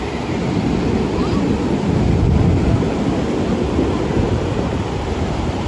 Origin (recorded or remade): remade